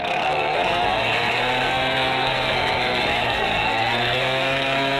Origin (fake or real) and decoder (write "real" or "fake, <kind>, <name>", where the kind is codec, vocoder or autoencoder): fake, codec, SNAC